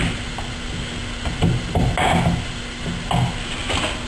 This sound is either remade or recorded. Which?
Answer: recorded